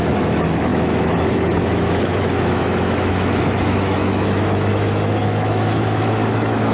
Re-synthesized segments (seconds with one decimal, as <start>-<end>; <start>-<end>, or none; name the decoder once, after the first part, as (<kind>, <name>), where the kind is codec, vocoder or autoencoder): 0.0-6.7 (autoencoder, DAC-VAE)